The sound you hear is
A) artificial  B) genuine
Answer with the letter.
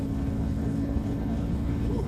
A